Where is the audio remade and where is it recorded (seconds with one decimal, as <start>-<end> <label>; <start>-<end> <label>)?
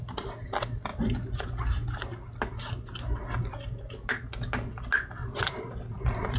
0.0-5.2 recorded; 5.2-6.4 remade